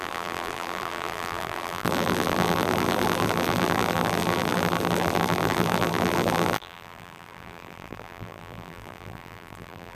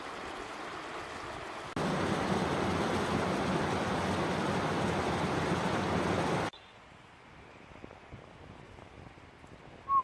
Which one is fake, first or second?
first